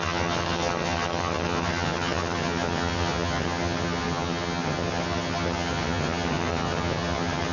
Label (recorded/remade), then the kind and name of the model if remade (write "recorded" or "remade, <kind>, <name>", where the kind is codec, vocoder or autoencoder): remade, vocoder, HiFi-GAN